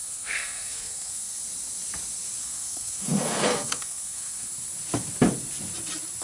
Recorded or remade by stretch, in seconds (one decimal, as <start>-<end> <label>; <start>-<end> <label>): 0.0-1.4 remade; 1.4-2.4 recorded; 2.4-4.5 remade; 4.5-6.2 recorded